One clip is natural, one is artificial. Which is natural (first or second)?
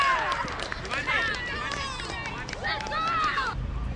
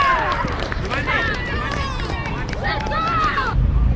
first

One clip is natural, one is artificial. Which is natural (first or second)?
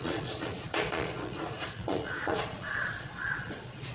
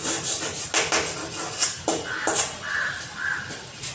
second